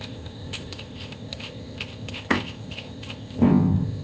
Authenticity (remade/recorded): remade